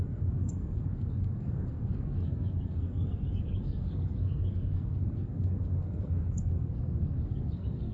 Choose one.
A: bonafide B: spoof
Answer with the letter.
B